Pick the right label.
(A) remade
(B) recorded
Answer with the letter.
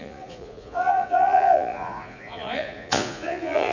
A